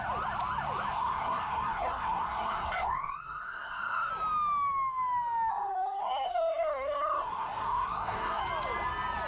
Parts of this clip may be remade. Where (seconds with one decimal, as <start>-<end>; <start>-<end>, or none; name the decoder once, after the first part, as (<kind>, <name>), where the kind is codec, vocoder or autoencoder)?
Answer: 0.9-4.1 (codec, SNAC); 5.5-8.4